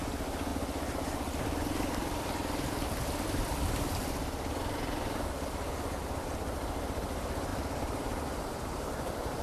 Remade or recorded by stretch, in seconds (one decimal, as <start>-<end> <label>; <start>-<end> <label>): 0.0-0.5 recorded; 0.5-4.1 remade; 4.1-7.5 recorded; 7.5-9.4 remade